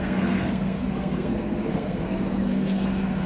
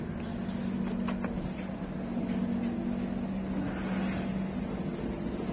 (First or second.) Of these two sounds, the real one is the second